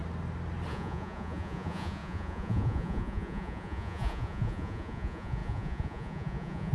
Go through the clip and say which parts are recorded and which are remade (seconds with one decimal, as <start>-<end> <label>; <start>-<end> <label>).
0.0-0.7 recorded; 0.7-6.7 remade

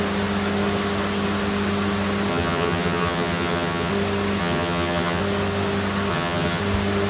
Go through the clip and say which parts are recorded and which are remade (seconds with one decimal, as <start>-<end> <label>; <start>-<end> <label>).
0.0-2.3 recorded; 2.3-3.9 remade; 3.9-4.4 recorded; 4.4-5.2 remade; 5.2-6.1 recorded; 6.1-6.6 remade; 6.6-7.1 recorded

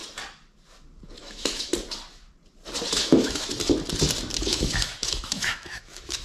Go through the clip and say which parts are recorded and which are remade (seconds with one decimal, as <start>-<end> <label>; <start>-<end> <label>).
0.0-1.2 recorded; 1.2-1.7 remade; 1.7-2.9 recorded; 2.9-3.5 remade; 3.5-4.4 recorded; 4.4-6.2 remade

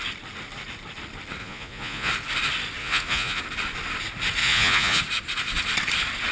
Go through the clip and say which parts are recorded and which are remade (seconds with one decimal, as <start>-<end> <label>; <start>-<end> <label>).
0.0-1.4 recorded; 1.4-2.1 remade; 2.1-2.8 recorded; 2.8-3.4 remade; 3.4-4.4 recorded; 4.4-5.0 remade; 5.0-6.3 recorded

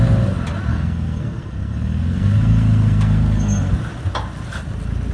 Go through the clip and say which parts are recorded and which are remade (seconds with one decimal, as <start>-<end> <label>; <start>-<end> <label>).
0.0-0.7 recorded; 0.7-3.8 remade; 3.8-5.1 recorded

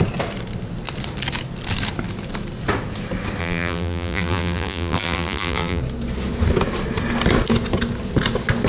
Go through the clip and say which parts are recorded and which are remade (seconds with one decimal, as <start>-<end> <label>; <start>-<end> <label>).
0.0-3.4 recorded; 3.4-5.8 remade; 5.8-8.7 recorded

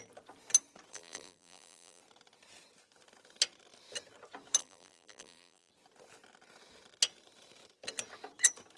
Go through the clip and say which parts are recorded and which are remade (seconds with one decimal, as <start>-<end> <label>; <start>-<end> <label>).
0.0-0.9 recorded; 0.9-2.0 remade; 2.0-4.6 recorded; 4.6-5.7 remade; 5.7-8.8 recorded